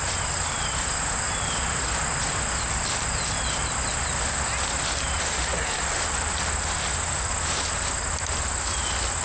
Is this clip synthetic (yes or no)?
no